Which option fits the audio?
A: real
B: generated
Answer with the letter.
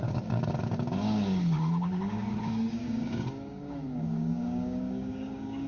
B